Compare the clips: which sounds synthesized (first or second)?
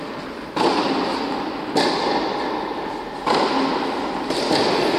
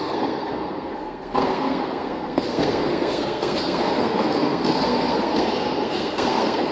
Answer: second